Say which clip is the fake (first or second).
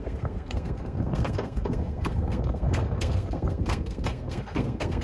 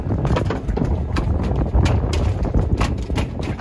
first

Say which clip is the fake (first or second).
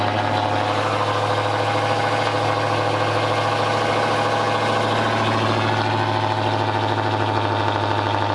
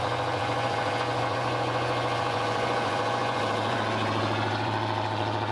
second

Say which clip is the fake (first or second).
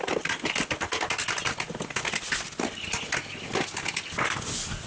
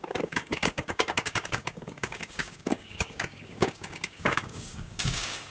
second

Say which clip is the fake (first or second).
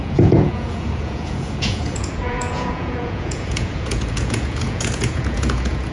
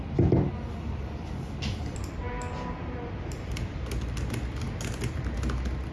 first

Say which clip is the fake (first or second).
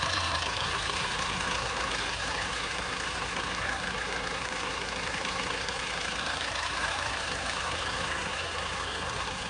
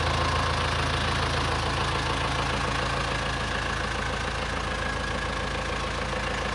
first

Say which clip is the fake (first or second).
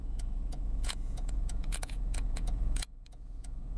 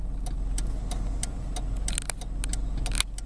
first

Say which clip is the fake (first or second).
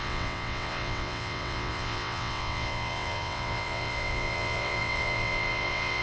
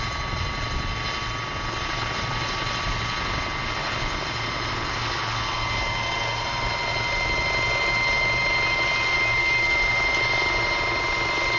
first